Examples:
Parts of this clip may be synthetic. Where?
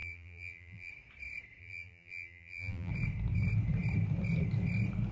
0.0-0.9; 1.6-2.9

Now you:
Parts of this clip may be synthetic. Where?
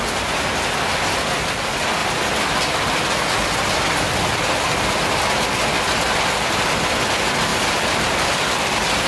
7.5-8.7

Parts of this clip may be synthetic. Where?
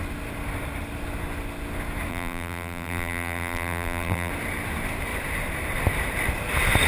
2.1-4.3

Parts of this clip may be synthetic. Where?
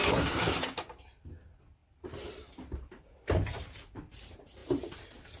0.0-0.5; 1.8-4.0; 4.6-5.4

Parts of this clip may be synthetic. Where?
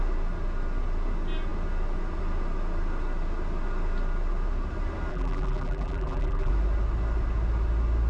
5.1-6.5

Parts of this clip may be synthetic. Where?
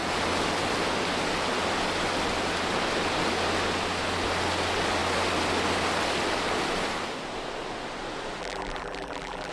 8.4-9.5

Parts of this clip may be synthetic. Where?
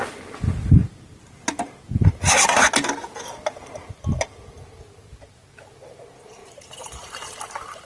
6.4-7.8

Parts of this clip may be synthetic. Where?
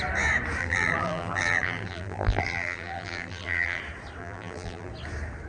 0.6-3.8; 4.2-4.9